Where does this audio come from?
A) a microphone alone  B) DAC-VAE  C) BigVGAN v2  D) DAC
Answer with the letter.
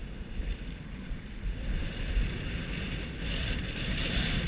C